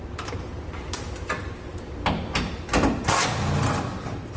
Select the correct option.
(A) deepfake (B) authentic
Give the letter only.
B